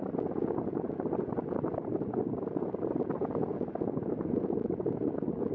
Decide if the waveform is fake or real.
real